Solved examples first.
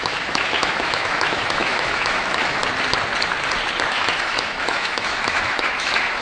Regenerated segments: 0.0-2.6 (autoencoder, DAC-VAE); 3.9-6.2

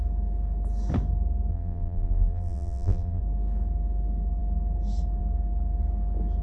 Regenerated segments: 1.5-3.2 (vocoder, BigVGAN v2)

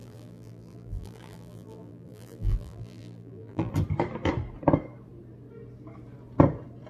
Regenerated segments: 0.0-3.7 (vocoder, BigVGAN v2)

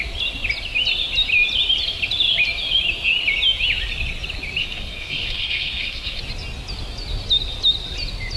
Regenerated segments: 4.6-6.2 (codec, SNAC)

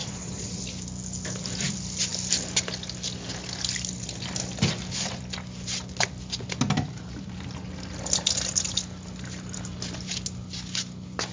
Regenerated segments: 0.0-0.6 (vocoder, Vocos)